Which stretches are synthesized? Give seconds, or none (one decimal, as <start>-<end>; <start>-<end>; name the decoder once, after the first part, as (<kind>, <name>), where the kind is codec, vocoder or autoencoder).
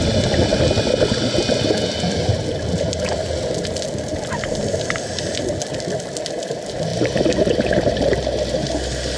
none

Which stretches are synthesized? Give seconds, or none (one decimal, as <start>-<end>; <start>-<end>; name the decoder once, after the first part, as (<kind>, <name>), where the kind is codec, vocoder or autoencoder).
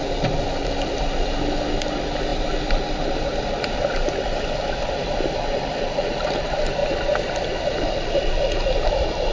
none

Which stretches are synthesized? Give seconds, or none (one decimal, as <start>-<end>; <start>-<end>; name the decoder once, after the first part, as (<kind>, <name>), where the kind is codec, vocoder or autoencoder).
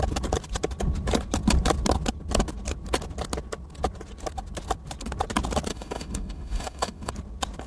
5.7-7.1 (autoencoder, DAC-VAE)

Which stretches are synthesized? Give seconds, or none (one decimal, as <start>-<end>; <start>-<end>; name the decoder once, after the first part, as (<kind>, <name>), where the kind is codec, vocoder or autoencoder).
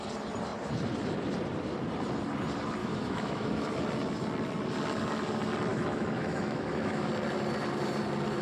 2.8-3.7 (autoencoder, DAC-VAE); 5.7-7.1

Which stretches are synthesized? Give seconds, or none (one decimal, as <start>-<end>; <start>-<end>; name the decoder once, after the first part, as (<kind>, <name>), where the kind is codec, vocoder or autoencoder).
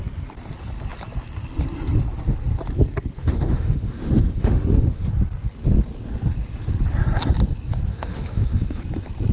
3.2-5.1 (autoencoder, DAC-VAE); 7.9-8.8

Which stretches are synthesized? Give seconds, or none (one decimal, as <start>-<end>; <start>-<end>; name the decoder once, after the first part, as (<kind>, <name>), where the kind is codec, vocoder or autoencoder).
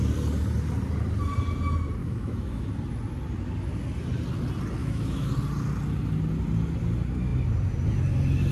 2.0-2.7 (autoencoder, DAC-VAE); 4.8-5.3